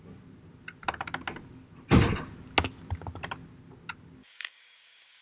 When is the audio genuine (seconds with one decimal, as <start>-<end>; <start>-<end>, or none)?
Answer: 0.0-4.2